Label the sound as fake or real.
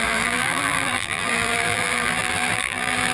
fake